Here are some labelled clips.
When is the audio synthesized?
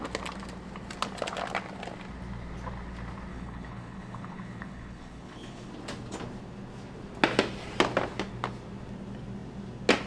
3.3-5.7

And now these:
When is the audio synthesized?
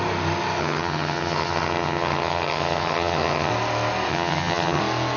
0.6-3.5; 4.1-4.8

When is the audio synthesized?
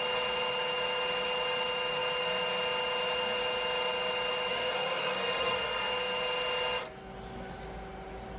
4.5-5.9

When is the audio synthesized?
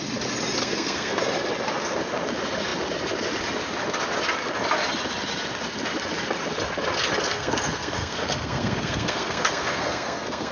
0.6-1.2; 7.3-10.5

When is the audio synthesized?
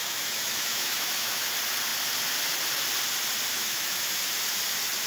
0.0-1.5; 3.5-4.2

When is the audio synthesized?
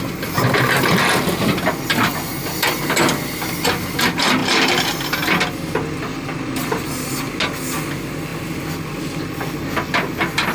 none